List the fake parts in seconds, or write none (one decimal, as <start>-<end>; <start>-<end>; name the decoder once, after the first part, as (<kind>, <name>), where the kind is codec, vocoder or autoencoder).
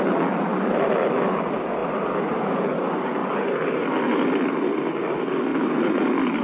0.5-1.1 (vocoder, BigVGAN v2); 5.5-6.0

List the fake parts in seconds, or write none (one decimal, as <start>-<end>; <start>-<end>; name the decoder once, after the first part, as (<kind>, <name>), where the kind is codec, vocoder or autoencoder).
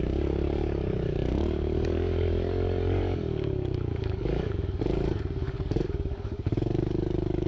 0.0-7.5 (codec, DAC)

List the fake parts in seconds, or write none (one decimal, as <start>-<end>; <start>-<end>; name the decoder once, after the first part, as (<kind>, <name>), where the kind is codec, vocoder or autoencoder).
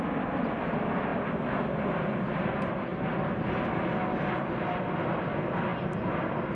none